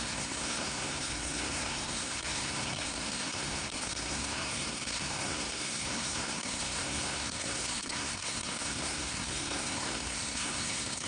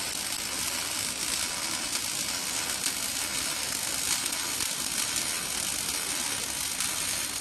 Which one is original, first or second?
second